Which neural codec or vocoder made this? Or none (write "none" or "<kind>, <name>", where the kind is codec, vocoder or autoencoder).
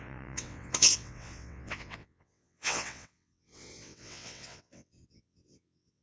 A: vocoder, WaveNeXt